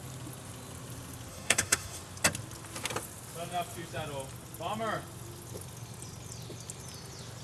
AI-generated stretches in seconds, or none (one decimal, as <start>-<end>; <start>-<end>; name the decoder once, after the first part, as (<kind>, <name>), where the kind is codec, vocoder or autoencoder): 1.3-2.0 (codec, SNAC)

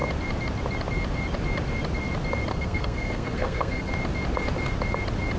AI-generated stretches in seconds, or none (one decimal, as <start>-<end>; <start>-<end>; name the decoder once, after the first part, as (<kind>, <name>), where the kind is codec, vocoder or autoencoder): 2.5-3.9 (codec, SNAC)